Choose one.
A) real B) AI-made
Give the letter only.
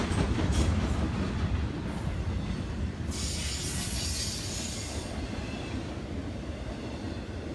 A